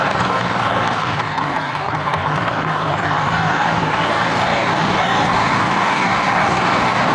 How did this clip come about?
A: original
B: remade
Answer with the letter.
B